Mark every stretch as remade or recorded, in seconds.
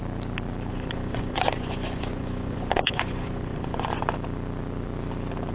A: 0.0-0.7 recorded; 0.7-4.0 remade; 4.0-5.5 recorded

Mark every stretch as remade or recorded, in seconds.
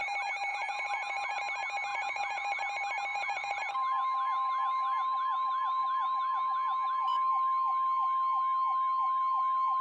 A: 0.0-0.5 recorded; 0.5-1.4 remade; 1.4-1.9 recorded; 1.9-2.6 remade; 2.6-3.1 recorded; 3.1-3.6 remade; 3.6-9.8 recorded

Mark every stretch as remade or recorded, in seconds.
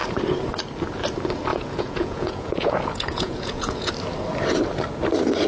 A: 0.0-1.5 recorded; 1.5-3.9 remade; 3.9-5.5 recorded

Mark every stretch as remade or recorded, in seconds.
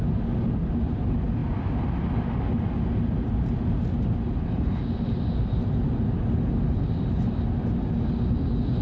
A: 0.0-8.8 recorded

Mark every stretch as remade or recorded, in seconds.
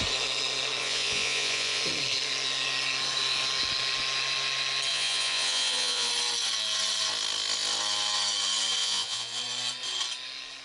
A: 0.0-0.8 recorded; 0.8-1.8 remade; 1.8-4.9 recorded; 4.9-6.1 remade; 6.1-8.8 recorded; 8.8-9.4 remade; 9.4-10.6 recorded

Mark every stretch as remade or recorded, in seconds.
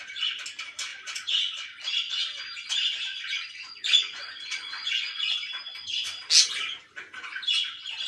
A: 0.0-0.9 recorded; 0.9-1.5 remade; 1.5-3.1 recorded; 3.1-5.2 remade; 5.2-8.1 recorded